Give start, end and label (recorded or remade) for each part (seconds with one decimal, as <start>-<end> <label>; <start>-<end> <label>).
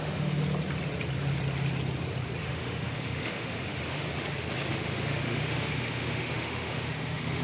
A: 0.0-0.4 remade; 0.4-2.4 recorded; 2.4-4.1 remade; 4.1-4.7 recorded; 4.7-7.4 remade